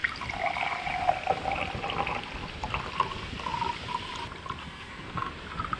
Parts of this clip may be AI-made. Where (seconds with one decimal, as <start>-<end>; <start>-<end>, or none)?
4.6-5.3